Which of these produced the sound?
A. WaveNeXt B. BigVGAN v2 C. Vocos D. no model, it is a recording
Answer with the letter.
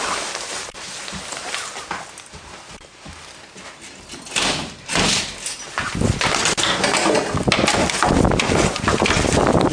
D